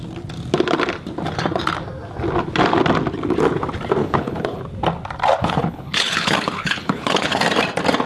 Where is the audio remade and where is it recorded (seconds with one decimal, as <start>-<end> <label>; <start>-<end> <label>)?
0.0-4.0 recorded; 4.0-4.6 remade; 4.6-5.4 recorded; 5.4-7.4 remade; 7.4-8.1 recorded